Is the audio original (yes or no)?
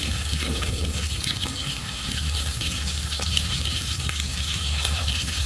no